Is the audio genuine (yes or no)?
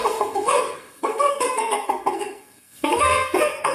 no